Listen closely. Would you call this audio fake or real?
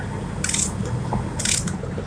real